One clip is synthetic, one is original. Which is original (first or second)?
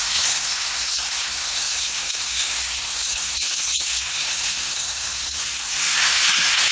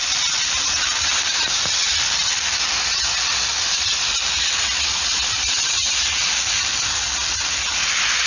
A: second